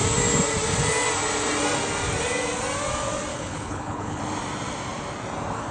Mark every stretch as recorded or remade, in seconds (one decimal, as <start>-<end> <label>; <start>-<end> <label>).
0.0-3.3 recorded; 3.3-4.2 remade; 4.2-5.7 recorded